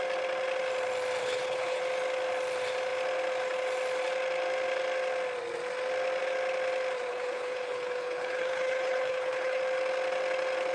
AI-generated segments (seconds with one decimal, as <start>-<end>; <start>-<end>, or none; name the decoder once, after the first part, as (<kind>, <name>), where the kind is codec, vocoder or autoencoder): 1.2-1.8 (codec, HILCodec); 7.1-9.6